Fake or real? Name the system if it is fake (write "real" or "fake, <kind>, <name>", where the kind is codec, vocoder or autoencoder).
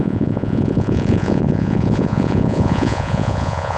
fake, vocoder, Vocos